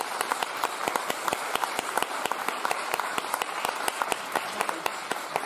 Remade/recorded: remade